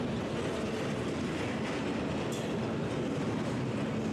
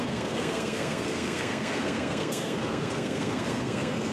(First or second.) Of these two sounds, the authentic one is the first